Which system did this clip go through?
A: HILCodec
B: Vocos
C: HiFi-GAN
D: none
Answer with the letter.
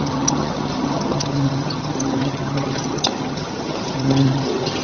C